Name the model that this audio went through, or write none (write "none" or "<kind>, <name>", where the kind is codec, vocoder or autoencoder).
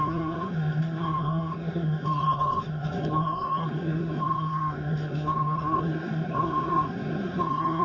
codec, SNAC